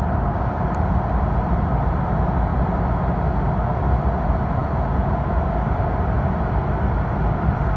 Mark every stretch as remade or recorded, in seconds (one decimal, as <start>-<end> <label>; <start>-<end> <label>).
0.0-7.8 recorded